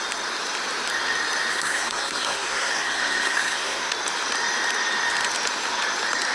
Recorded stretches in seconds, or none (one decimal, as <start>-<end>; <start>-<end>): 0.0-1.5; 3.9-6.3